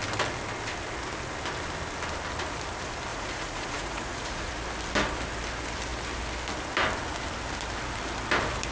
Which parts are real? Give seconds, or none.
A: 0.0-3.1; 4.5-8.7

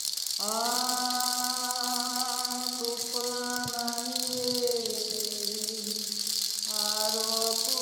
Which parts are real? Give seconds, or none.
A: 0.0-1.6; 2.1-3.1; 3.7-4.7; 6.1-7.8

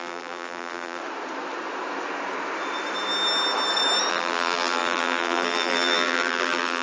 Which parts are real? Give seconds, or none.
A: 1.0-4.1

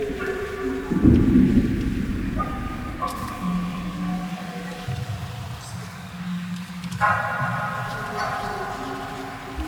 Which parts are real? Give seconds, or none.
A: 0.0-2.1; 5.0-5.8; 7.1-9.7

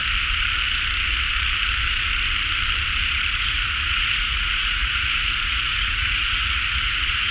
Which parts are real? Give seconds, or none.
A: 0.0-3.3

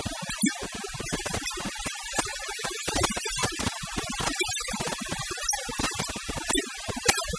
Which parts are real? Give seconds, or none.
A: 0.0-2.3; 2.9-7.4

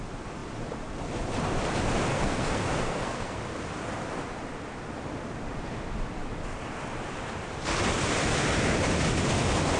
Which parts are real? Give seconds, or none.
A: 0.0-2.1; 3.4-9.8

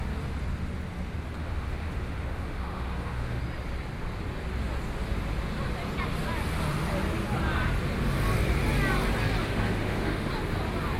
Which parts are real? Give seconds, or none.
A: 0.0-1.4; 3.4-9.4; 10.3-11.0